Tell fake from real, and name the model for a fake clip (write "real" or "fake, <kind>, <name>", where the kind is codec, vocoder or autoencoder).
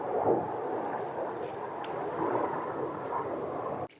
real